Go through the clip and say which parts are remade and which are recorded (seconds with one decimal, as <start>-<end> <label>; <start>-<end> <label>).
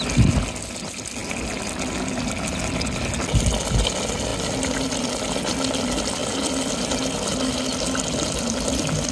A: 0.0-9.1 recorded